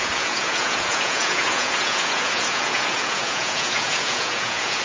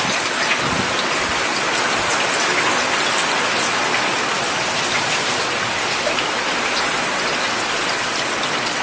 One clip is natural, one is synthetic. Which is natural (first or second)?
second